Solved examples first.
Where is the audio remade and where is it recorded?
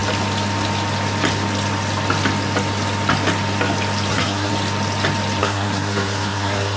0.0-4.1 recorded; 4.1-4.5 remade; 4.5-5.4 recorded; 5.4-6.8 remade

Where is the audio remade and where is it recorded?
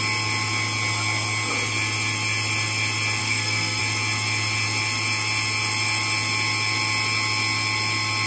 0.0-3.2 recorded; 3.2-3.8 remade; 3.8-8.3 recorded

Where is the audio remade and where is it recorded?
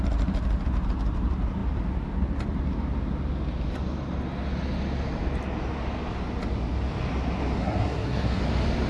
0.0-7.6 recorded; 7.6-8.4 remade; 8.4-8.9 recorded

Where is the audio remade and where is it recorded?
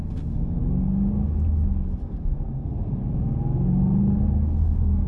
0.0-0.6 remade; 0.6-2.0 recorded; 2.0-3.0 remade; 3.0-4.0 recorded; 4.0-5.1 remade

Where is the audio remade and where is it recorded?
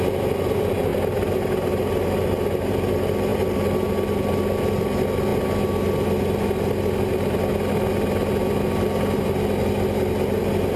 0.0-10.8 recorded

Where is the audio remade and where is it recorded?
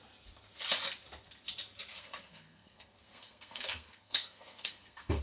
0.0-1.9 recorded; 1.9-5.2 remade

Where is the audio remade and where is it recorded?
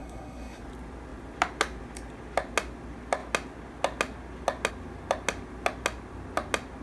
0.0-0.6 remade; 0.6-6.8 recorded